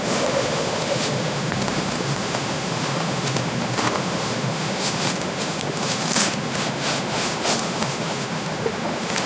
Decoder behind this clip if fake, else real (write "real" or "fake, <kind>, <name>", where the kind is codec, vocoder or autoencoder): fake, autoencoder, DAC-VAE